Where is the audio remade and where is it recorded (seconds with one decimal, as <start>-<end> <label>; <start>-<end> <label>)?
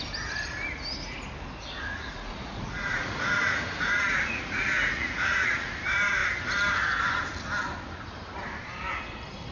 0.0-1.9 recorded; 1.9-5.7 remade; 5.7-9.5 recorded